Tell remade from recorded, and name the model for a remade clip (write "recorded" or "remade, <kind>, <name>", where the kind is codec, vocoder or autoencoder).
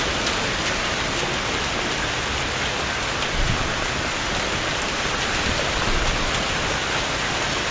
recorded